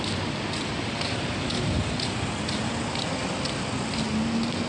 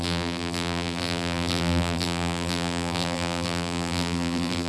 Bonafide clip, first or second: first